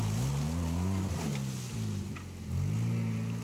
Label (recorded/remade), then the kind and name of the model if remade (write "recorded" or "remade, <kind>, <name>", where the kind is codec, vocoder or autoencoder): recorded